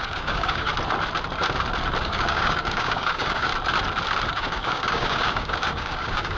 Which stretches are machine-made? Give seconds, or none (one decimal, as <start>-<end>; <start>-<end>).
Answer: 0.0-0.7; 2.0-3.5; 4.3-6.4